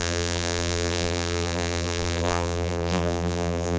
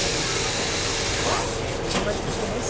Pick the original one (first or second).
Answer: second